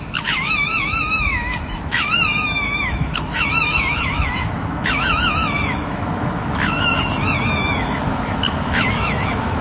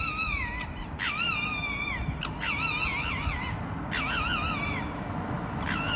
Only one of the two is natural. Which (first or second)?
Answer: second